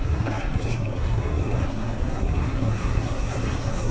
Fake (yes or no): yes